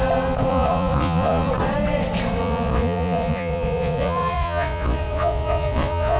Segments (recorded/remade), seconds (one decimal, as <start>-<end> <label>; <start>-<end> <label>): 0.0-0.5 recorded; 0.5-1.5 remade; 1.5-2.4 recorded; 2.4-6.2 remade